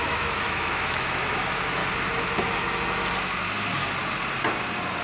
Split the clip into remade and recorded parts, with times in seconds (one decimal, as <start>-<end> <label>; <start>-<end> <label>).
0.0-1.8 remade; 1.8-5.0 recorded